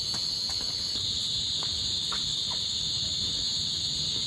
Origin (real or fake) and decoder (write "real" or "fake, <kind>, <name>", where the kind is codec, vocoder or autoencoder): real